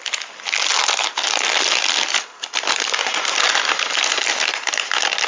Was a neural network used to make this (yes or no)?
no